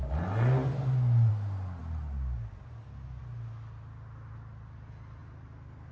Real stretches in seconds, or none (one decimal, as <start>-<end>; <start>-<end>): 0.0-5.9